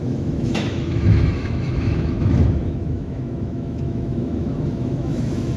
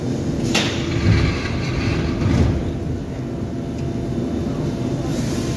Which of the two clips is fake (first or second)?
first